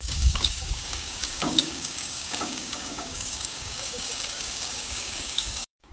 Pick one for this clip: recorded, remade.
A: remade